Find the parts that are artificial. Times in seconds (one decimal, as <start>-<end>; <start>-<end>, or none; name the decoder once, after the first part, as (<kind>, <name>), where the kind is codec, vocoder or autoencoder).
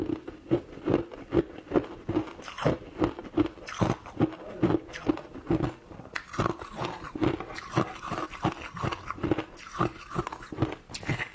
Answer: none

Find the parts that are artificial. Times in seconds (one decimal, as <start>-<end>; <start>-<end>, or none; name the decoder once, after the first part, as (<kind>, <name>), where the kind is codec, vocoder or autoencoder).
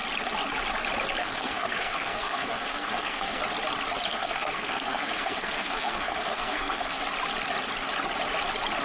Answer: 1.2-3.4 (codec, SNAC); 4.1-7.0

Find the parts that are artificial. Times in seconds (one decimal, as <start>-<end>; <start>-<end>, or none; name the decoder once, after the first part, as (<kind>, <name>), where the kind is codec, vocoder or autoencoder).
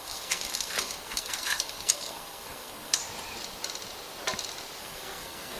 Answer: 0.0-3.0 (codec, SNAC); 4.8-5.6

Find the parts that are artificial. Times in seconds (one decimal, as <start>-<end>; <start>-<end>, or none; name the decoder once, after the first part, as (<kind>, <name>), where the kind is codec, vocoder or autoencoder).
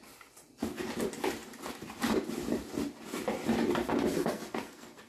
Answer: 4.1-5.1 (codec, SNAC)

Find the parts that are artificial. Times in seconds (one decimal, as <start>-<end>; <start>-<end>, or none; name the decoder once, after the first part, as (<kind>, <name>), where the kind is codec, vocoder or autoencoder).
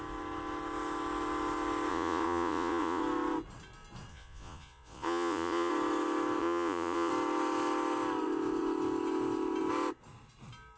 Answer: 1.9-3.0 (vocoder, Vocos); 4.1-5.7; 6.4-7.1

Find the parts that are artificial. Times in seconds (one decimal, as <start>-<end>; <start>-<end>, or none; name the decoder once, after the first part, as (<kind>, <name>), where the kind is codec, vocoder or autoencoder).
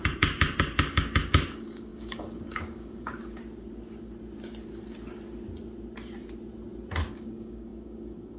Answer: 0.0-3.4 (codec, DAC); 7.1-8.4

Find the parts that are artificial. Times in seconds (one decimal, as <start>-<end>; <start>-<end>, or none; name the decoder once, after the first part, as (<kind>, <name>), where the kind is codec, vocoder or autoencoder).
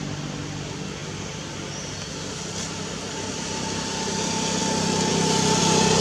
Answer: none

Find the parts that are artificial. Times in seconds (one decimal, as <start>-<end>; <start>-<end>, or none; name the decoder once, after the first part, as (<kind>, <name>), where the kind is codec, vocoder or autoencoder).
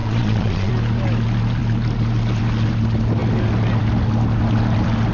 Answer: 0.0-0.7 (vocoder, Vocos)